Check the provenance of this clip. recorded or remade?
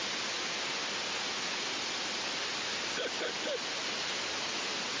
recorded